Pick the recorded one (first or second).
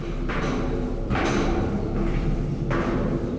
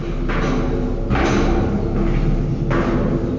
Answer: second